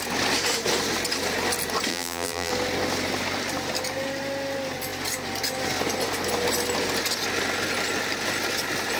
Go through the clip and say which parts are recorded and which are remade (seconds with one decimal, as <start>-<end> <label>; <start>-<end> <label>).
0.0-1.9 recorded; 1.9-2.5 remade; 2.5-9.0 recorded